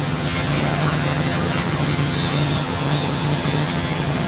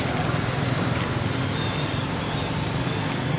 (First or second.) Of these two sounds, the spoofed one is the first